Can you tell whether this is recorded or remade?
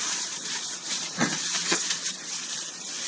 remade